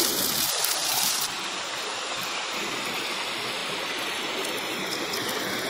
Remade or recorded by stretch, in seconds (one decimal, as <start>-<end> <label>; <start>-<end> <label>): 0.0-0.9 recorded; 0.9-2.4 remade; 2.4-5.7 recorded